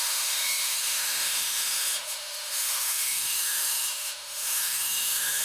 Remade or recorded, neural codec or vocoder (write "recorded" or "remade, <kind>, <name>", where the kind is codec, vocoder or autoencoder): remade, autoencoder, DAC-VAE